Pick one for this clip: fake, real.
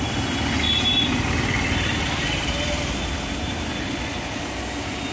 real